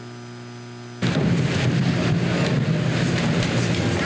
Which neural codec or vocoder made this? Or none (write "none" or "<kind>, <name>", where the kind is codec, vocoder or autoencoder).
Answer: none